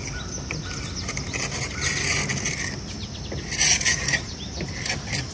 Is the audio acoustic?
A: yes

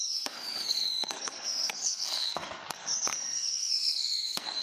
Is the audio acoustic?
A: no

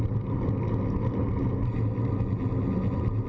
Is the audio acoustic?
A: yes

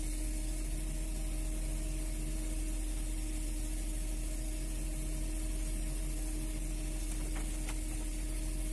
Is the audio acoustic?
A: yes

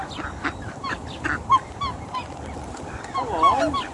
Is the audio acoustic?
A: yes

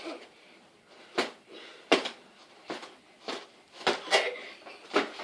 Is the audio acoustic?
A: yes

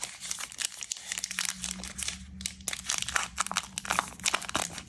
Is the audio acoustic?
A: yes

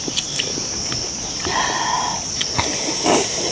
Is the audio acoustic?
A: yes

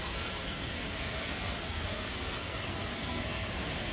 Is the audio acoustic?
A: no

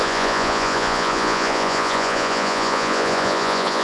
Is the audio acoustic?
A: no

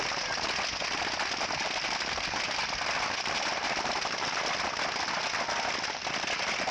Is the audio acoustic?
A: yes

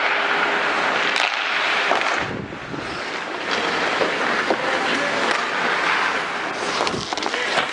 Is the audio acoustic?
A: yes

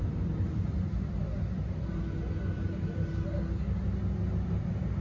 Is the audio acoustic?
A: yes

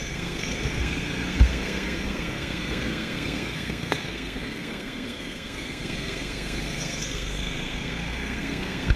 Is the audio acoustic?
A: no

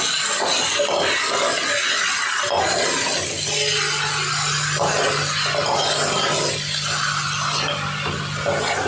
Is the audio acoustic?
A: yes